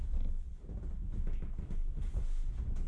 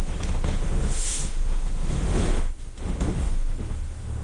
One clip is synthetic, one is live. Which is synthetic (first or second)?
second